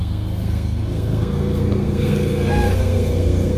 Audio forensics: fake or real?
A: fake